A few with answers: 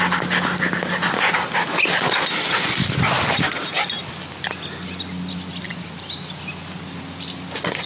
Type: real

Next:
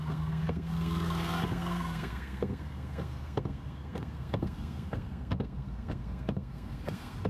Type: fake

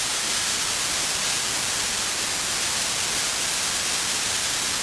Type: real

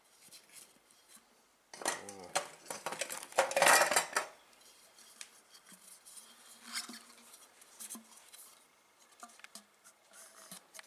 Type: real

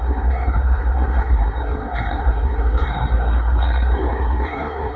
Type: fake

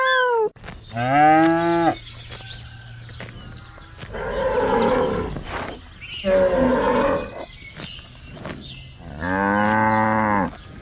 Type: real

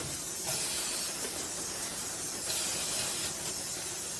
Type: real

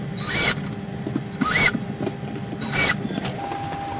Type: real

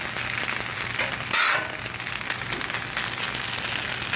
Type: real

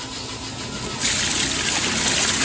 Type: real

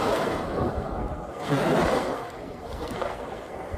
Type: fake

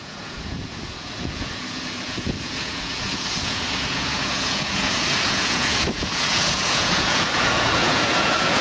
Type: fake